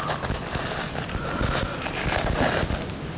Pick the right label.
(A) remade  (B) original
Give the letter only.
B